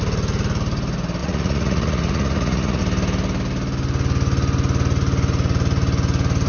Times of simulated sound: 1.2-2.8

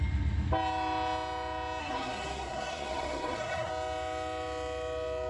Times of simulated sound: 1.8-3.7

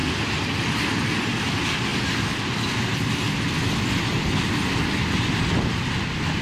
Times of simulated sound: none